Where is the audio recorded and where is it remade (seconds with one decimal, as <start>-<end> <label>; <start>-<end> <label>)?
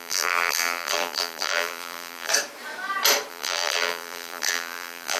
0.0-2.3 remade; 2.3-3.3 recorded; 3.3-5.2 remade